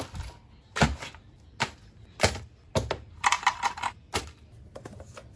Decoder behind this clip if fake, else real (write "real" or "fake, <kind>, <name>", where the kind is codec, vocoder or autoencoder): real